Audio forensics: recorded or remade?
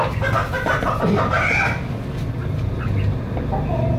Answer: recorded